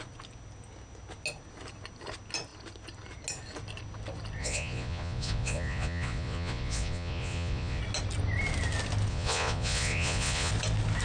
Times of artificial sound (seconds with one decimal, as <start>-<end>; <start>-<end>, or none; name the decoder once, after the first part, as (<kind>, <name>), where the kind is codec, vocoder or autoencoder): 4.4-7.8 (vocoder, Vocos); 9.1-10.5